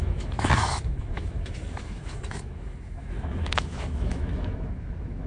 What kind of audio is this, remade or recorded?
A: remade